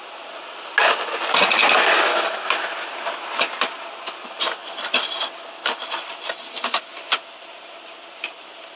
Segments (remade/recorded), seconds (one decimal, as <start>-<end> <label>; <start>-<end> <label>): 0.0-8.8 recorded